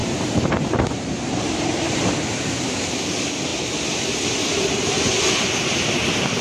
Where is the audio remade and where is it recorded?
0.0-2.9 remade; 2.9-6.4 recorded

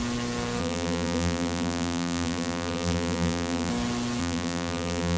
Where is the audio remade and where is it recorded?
0.0-0.6 recorded; 0.6-3.7 remade; 3.7-4.2 recorded; 4.2-5.2 remade

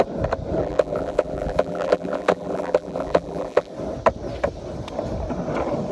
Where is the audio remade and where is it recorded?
0.0-0.6 recorded; 0.6-3.7 remade; 3.7-5.9 recorded

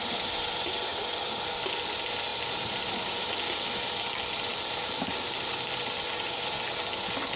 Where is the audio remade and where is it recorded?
0.0-2.3 recorded; 2.3-3.3 remade; 3.3-4.5 recorded; 4.5-5.8 remade; 5.8-7.4 recorded

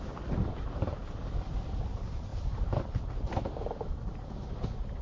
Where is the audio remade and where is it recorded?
0.0-1.0 remade; 1.0-1.8 recorded; 1.8-5.0 remade

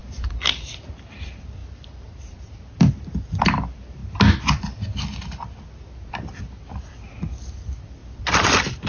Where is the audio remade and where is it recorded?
0.0-4.0 remade; 4.0-6.4 recorded; 6.4-8.9 remade

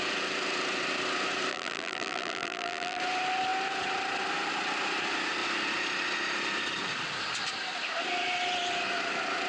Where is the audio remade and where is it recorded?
0.0-1.5 recorded; 1.5-3.0 remade; 3.0-9.5 recorded